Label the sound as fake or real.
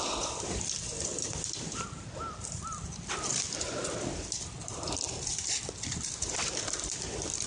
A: fake